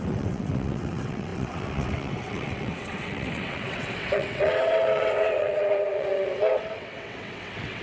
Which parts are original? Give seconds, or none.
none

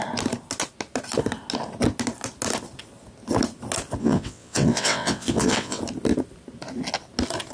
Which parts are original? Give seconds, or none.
0.0-4.0; 5.8-7.5

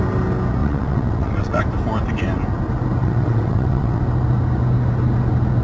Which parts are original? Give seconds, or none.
0.0-0.6; 1.6-3.0; 4.0-5.6

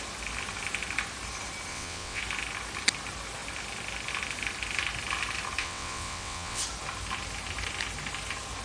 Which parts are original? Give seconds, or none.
0.0-1.7; 2.2-5.6; 6.6-8.6